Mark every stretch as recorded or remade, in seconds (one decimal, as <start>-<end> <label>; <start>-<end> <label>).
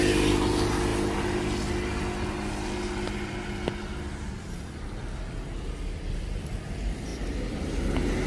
0.0-8.3 recorded